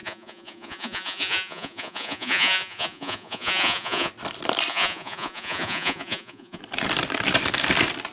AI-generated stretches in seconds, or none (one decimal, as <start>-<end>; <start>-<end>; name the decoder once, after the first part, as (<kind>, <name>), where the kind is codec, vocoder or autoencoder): 0.0-4.1 (vocoder, Vocos); 4.7-6.6